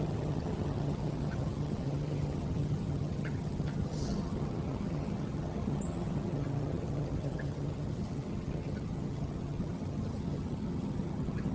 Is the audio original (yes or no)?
no